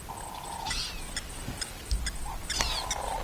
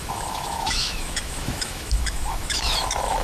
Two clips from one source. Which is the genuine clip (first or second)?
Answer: first